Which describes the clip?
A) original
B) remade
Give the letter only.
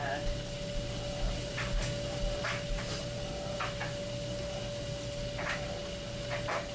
A